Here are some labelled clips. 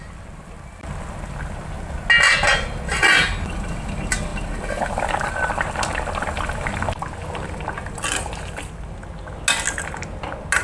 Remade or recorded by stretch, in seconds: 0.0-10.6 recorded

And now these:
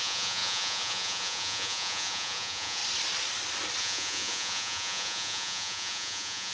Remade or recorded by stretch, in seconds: 0.0-2.8 remade; 2.8-3.8 recorded; 3.8-6.5 remade

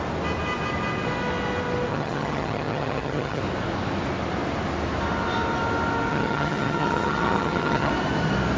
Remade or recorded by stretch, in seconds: 0.0-1.9 recorded; 1.9-3.4 remade; 3.4-6.1 recorded; 6.1-7.9 remade; 7.9-8.6 recorded

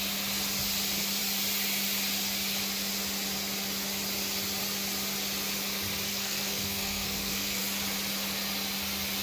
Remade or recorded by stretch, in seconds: 0.0-6.1 recorded; 6.1-7.6 remade; 7.6-9.2 recorded

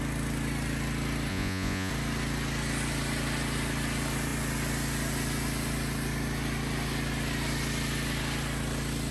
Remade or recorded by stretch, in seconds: 0.0-1.3 recorded; 1.3-1.9 remade; 1.9-9.1 recorded

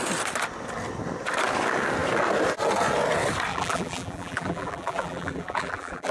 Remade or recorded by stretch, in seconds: 0.0-3.5 recorded; 3.5-6.1 remade

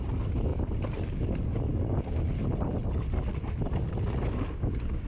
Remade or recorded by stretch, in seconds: 0.0-5.1 recorded

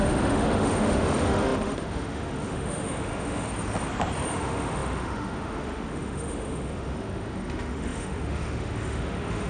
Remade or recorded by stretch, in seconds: 0.0-3.5 remade; 3.5-4.3 recorded; 4.3-9.5 remade